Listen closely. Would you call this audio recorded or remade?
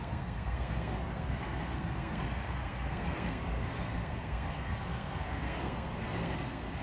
remade